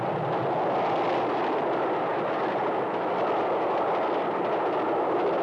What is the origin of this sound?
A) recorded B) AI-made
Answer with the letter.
A